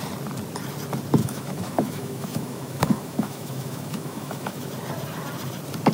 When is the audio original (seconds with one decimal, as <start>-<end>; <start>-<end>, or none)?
0.0-1.2; 4.7-5.9